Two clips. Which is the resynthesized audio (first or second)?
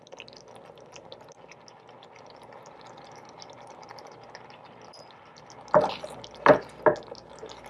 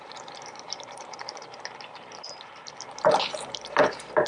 second